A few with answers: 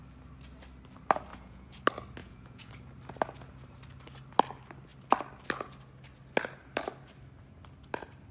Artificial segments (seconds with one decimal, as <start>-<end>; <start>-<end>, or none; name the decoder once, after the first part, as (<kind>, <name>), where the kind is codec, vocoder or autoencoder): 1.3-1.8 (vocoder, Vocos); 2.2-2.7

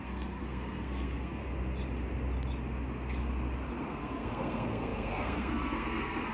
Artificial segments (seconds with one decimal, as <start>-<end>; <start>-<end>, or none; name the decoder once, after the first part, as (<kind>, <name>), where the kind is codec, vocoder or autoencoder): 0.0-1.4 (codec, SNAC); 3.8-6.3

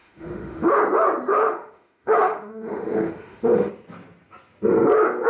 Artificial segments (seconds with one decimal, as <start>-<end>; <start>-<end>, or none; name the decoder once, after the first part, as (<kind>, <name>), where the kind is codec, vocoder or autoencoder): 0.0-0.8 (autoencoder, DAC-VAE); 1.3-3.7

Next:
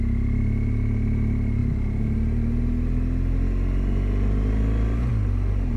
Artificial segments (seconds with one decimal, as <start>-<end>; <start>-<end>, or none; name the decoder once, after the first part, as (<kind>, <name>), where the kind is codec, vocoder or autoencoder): none

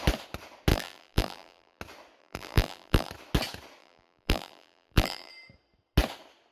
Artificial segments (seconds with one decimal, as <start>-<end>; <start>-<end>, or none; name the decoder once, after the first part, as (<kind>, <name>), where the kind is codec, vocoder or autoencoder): 0.7-1.8 (vocoder, BigVGAN v2); 2.2-3.1; 3.8-5.3

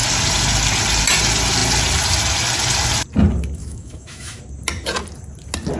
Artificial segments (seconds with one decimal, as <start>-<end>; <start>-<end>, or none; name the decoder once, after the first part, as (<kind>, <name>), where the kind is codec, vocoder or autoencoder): 3.6-4.4 (autoencoder, DAC-VAE)

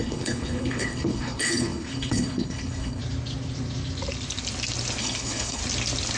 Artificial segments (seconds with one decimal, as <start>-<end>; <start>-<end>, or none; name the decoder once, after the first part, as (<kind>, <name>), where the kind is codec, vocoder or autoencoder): 0.0-3.0 (codec, HILCodec); 5.0-5.6